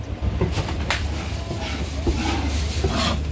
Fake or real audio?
real